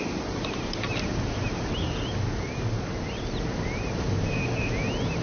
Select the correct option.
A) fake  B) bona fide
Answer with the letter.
B